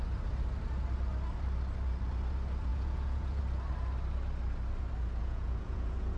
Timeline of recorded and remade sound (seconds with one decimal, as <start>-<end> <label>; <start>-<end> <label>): 0.0-2.7 recorded; 2.7-3.4 remade; 3.4-5.2 recorded; 5.2-6.2 remade